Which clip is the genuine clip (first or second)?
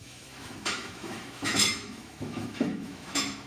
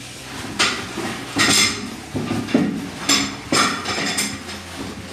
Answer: second